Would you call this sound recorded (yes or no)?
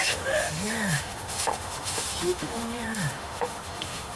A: no